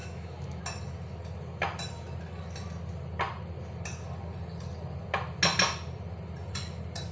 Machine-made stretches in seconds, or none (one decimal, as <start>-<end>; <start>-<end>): 0.0-0.6